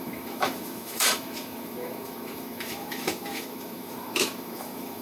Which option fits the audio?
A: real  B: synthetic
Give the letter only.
B